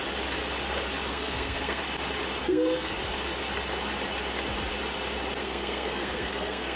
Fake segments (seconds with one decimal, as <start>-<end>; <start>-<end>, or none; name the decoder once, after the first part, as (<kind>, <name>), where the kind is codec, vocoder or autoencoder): 1.1-1.8 (codec, SNAC); 2.4-2.9; 5.4-6.8